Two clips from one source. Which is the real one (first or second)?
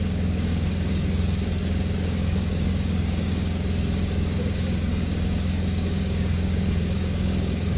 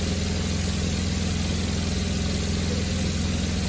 second